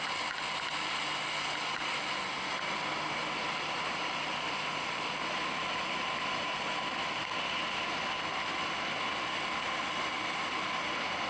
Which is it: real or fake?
real